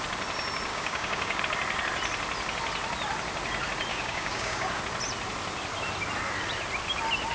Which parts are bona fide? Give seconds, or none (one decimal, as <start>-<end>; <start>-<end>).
0.0-0.7; 1.4-3.9; 4.8-7.3